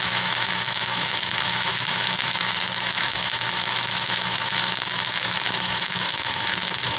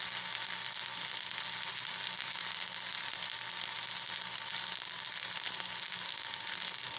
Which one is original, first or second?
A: second